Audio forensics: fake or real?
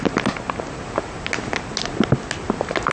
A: real